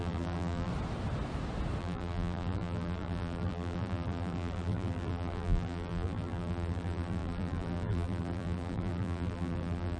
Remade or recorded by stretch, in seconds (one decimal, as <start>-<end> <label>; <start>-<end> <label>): 0.0-0.7 remade; 0.7-1.8 recorded; 1.8-10.0 remade